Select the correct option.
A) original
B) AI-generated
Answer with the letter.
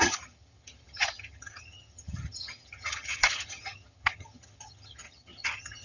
B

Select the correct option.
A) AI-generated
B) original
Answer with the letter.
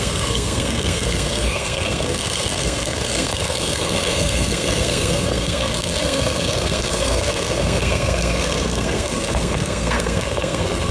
A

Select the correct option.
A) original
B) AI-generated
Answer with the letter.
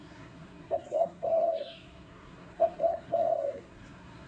B